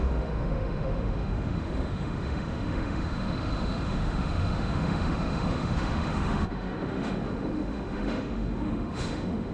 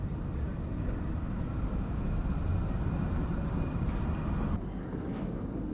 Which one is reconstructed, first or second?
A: first